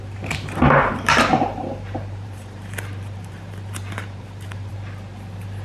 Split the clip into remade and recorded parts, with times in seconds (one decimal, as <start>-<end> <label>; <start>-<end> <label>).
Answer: 0.0-1.3 recorded; 1.3-4.7 remade; 4.7-5.6 recorded